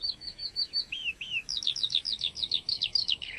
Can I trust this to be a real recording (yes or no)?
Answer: no